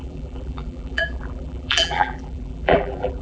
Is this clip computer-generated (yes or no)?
yes